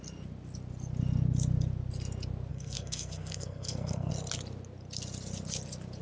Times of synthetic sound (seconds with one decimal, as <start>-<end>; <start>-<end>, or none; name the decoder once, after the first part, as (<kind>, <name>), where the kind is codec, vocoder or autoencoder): 2.5-4.1 (codec, SNAC)